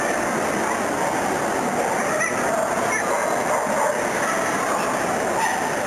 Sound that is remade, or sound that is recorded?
recorded